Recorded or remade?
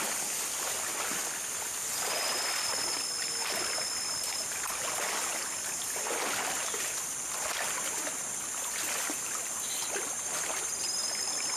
recorded